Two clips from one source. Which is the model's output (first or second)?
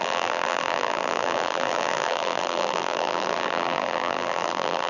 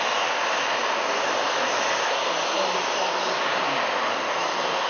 first